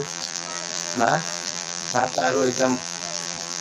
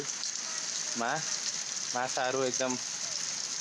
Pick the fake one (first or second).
first